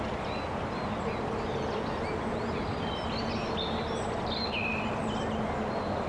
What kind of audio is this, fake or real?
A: real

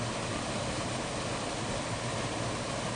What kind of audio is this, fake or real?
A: real